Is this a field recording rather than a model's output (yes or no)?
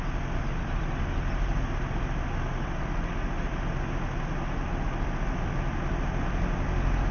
yes